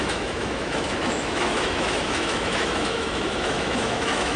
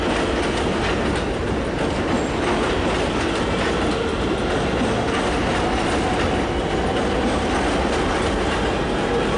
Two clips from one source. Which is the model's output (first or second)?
first